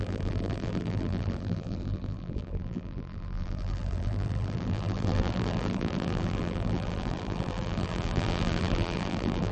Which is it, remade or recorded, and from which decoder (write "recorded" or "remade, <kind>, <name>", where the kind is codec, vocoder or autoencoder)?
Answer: remade, vocoder, BigVGAN v2